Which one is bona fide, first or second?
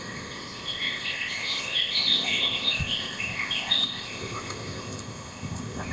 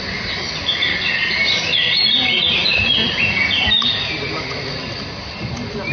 second